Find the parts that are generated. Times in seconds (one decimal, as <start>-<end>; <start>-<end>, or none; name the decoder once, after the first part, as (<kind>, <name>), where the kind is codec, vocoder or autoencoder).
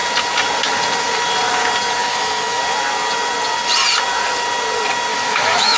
2.0-2.6 (autoencoder, DAC-VAE); 5.1-5.8